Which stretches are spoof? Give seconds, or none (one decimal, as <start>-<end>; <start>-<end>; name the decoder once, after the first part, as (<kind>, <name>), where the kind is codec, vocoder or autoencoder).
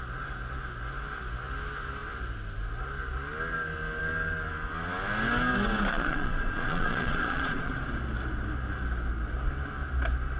5.9-7.7 (vocoder, Vocos)